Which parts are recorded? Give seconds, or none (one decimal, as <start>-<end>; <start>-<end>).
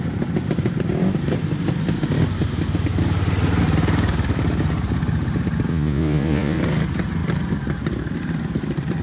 0.0-5.7; 6.6-9.0